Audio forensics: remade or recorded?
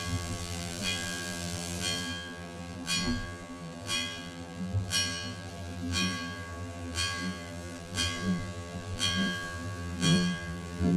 remade